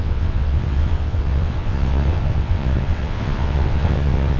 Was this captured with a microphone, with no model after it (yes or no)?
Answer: no